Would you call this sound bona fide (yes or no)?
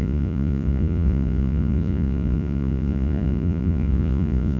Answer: no